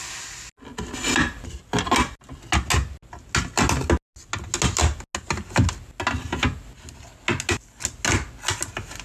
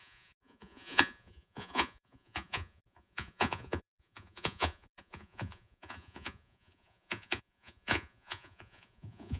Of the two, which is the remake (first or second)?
second